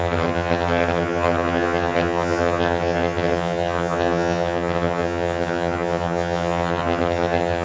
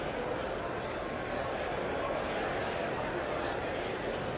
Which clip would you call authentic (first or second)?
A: second